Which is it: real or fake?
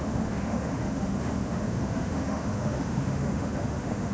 fake